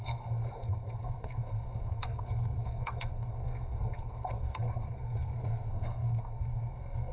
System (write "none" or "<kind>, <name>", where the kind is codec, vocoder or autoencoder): codec, SNAC